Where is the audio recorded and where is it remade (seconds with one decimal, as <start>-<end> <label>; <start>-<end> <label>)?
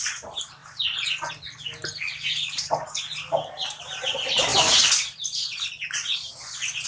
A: 0.0-6.9 recorded